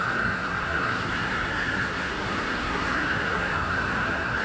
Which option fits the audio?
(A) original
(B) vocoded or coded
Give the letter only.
B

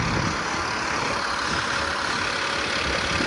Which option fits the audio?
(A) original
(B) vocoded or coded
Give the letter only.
A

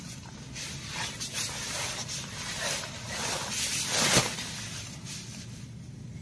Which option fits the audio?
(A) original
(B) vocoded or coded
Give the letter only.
A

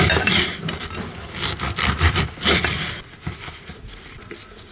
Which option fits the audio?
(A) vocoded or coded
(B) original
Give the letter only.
B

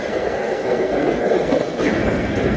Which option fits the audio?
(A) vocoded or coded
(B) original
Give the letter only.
A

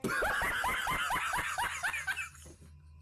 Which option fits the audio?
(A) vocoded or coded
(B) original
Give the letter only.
B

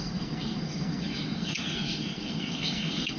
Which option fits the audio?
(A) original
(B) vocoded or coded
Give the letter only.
B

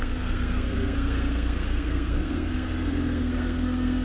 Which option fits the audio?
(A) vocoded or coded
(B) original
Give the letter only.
A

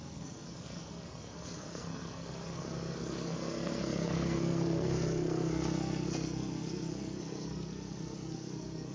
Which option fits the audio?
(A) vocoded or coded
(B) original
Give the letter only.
A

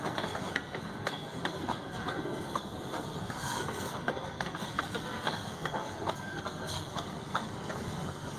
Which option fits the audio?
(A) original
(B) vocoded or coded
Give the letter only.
B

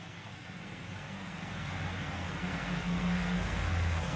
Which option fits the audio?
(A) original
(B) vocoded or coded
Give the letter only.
B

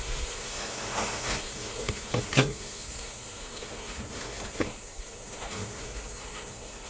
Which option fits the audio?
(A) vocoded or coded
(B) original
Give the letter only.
A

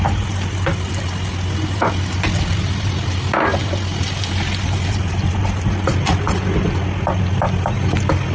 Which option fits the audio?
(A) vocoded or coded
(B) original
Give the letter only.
B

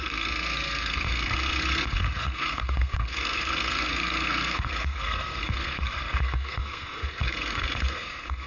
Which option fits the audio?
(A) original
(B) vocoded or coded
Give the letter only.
B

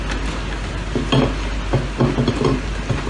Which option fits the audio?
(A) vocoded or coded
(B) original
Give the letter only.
B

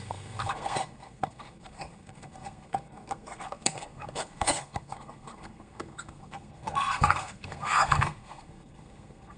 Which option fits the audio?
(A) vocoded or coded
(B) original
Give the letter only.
A